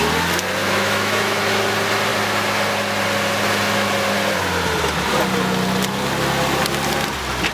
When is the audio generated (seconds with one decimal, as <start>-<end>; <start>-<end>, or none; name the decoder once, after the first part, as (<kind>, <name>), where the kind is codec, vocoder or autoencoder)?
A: 0.6-1.4 (autoencoder, DAC-VAE)